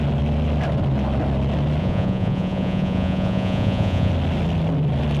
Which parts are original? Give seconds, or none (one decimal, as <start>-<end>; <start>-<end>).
0.0-1.8; 4.1-5.2